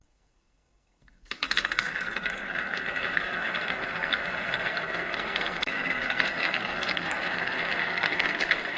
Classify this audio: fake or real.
fake